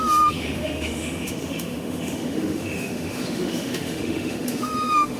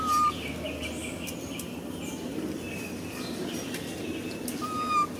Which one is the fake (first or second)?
first